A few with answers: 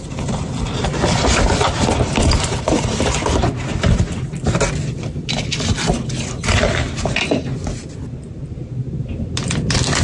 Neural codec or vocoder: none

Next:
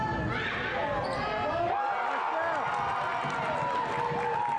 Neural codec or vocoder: none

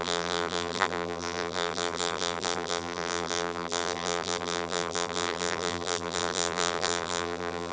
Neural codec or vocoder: vocoder, BigVGAN v2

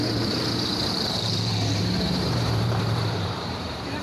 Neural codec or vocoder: vocoder, BigVGAN v2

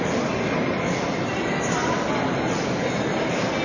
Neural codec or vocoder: none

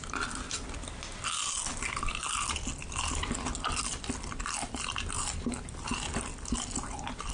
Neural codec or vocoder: none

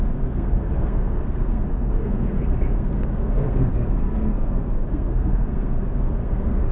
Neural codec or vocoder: codec, SNAC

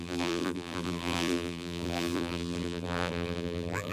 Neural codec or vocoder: vocoder, BigVGAN v2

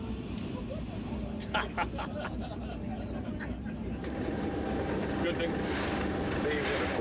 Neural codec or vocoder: none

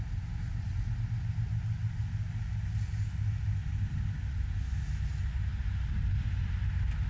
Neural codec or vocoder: none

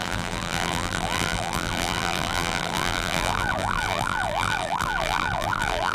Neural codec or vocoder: vocoder, BigVGAN v2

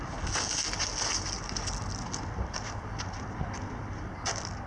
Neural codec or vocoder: none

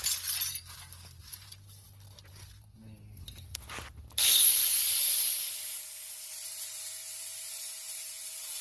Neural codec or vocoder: none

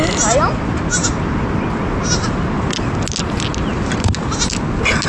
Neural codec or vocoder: none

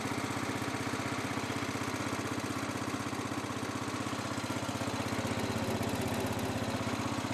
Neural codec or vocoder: none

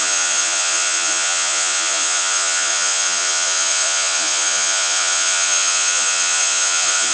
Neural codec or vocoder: vocoder, Vocos